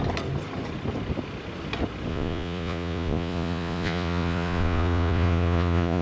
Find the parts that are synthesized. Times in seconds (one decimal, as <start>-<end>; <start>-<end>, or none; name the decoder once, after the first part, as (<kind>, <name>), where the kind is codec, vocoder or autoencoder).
2.1-6.0 (vocoder, Vocos)